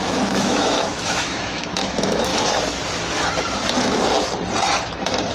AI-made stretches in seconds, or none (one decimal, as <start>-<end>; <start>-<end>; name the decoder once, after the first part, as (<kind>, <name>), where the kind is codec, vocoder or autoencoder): 0.0-2.3 (autoencoder, DAC-VAE)